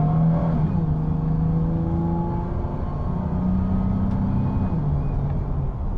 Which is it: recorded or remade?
recorded